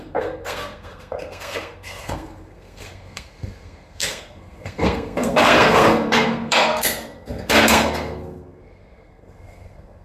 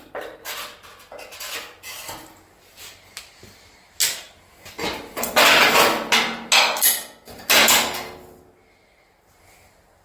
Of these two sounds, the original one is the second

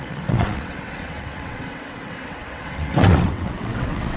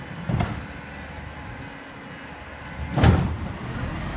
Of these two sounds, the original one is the second